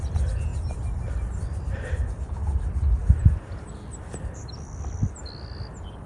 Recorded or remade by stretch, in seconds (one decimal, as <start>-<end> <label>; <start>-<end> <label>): 0.0-6.1 recorded